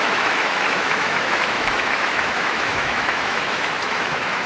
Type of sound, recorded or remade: remade